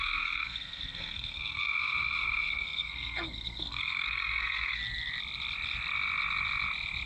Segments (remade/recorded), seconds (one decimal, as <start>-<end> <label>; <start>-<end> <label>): 0.0-4.8 remade; 4.8-7.1 recorded